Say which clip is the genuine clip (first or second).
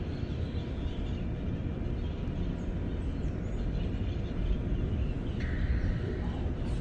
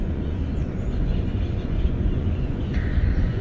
first